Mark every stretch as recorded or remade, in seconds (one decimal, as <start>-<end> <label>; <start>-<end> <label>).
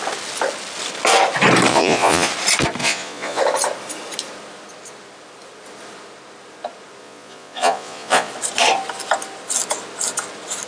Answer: 0.0-1.7 recorded; 1.7-2.3 remade; 2.3-2.8 recorded; 2.8-3.4 remade; 3.4-7.0 recorded; 7.0-8.3 remade; 8.3-10.7 recorded